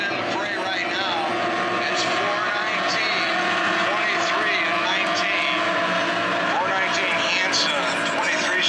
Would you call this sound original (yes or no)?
yes